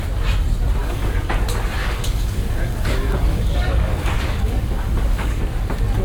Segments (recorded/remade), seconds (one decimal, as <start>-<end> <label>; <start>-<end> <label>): 0.0-0.8 recorded; 0.8-1.3 remade; 1.3-1.8 recorded; 1.8-5.4 remade; 5.4-6.0 recorded